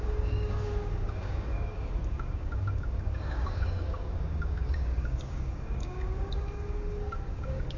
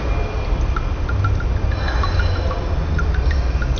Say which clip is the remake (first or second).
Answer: first